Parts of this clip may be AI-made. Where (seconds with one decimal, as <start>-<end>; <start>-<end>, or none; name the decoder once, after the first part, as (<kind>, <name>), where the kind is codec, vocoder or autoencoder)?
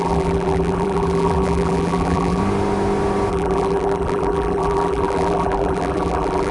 0.0-2.4 (vocoder, BigVGAN v2); 3.3-6.5